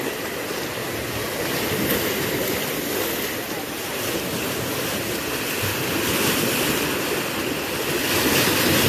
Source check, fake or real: real